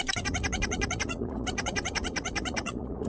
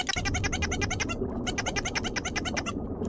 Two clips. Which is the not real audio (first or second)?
first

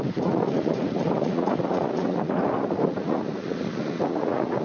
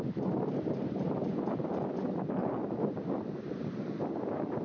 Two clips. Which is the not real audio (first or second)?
first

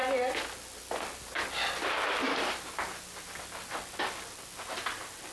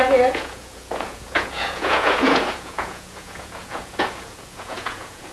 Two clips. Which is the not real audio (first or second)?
second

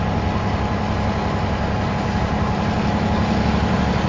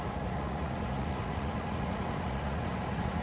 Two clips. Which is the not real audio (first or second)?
second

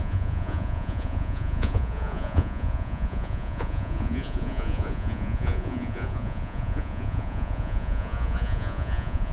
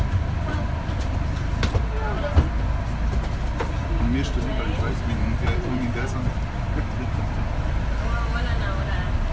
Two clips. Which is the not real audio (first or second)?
first